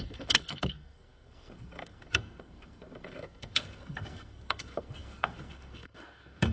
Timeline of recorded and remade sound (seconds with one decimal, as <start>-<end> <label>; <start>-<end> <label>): 0.0-6.5 remade